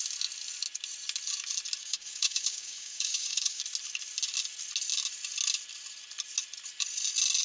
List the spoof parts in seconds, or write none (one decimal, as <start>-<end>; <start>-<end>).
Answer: 1.8-3.6